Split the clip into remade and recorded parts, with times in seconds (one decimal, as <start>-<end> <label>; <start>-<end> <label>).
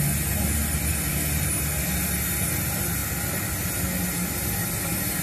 0.0-5.2 recorded